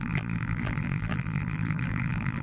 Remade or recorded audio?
remade